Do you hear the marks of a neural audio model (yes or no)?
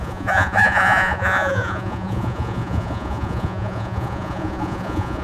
yes